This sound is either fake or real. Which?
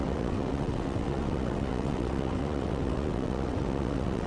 fake